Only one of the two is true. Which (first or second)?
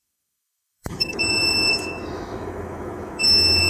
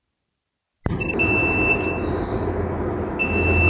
second